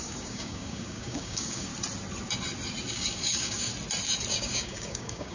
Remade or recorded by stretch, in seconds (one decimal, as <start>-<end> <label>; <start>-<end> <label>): 0.0-1.7 remade; 1.7-2.9 recorded; 2.9-3.7 remade; 3.7-4.3 recorded; 4.3-5.3 remade